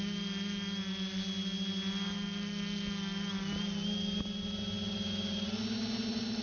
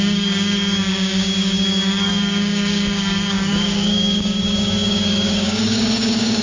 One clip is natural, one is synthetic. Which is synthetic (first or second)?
second